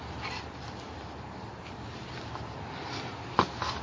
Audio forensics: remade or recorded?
recorded